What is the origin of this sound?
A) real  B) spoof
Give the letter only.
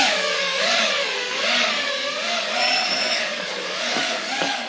B